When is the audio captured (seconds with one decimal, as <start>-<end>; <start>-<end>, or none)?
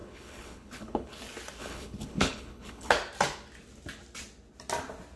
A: 1.2-1.6; 2.9-5.2